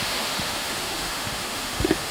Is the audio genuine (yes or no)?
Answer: no